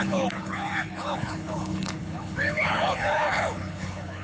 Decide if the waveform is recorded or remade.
remade